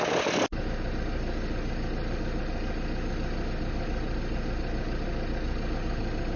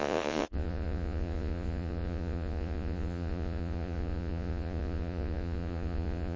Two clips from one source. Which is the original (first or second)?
first